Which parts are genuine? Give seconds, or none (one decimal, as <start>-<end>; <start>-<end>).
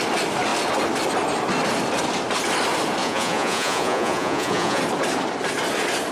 0.0-3.0; 4.8-6.1